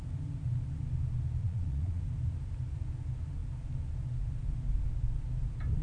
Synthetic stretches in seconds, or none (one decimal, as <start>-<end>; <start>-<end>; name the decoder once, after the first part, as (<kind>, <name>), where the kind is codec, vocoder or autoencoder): 1.4-2.0 (vocoder, Vocos)

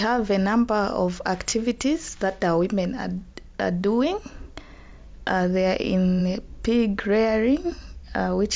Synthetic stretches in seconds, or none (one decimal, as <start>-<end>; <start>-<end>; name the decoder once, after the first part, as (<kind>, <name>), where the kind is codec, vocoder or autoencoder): none

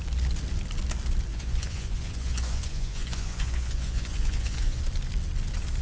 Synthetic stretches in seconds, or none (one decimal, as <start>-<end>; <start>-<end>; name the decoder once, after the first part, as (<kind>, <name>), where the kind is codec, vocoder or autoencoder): 1.3-4.8 (vocoder, Vocos)

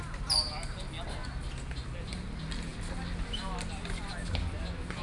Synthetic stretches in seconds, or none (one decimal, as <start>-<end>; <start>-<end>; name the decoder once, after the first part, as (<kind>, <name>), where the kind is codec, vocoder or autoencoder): none

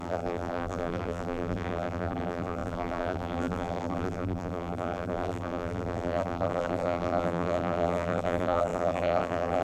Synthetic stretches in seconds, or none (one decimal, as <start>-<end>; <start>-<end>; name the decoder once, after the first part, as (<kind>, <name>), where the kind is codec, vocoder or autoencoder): 0.0-9.6 (vocoder, BigVGAN v2)

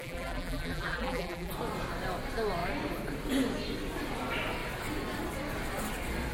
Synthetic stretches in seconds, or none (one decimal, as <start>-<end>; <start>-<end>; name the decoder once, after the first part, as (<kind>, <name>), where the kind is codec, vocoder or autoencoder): 0.0-1.5 (vocoder, BigVGAN v2)

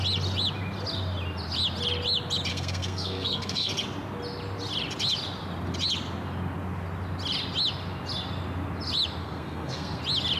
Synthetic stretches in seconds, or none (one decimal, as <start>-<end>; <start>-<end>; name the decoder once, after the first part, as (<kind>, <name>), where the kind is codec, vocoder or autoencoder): 2.5-3.7 (codec, SNAC); 9.2-10.0

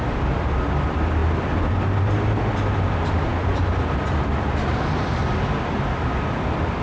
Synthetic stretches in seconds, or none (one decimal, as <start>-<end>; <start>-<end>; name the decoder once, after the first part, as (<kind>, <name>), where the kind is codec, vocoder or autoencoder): none